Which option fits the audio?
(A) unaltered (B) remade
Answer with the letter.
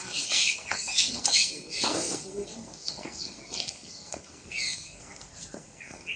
B